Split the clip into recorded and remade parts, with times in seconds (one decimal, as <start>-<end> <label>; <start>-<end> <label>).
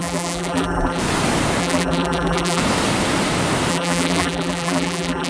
0.0-1.0 remade; 1.0-1.6 recorded; 1.6-2.6 remade; 2.6-3.7 recorded; 3.7-5.3 remade